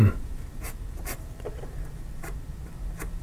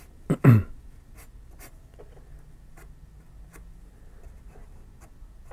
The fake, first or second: first